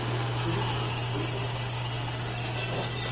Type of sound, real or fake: real